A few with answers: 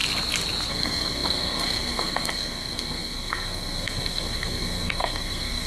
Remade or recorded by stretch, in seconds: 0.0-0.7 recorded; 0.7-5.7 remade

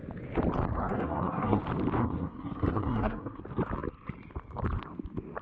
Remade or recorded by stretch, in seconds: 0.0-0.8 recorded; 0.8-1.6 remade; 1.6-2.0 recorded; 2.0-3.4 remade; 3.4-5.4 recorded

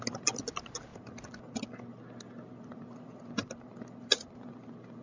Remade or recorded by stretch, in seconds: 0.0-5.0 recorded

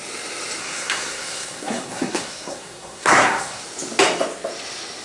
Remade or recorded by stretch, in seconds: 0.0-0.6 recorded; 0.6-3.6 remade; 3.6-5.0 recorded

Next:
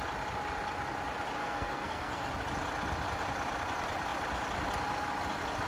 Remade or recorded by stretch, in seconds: 0.0-1.4 recorded; 1.4-2.3 remade; 2.3-5.7 recorded

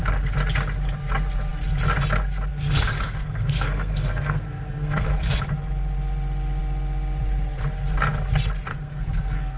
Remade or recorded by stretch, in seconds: 0.0-2.9 recorded; 2.9-5.4 remade; 5.4-8.7 recorded; 8.7-9.6 remade

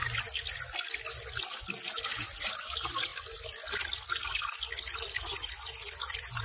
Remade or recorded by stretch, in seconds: 0.0-6.4 recorded